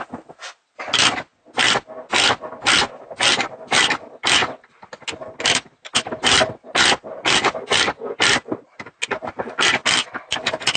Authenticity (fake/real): real